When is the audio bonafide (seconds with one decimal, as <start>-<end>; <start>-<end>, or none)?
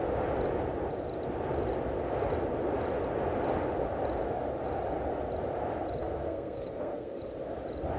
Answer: 0.0-6.0; 7.2-8.0